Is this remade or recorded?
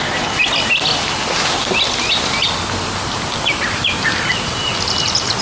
recorded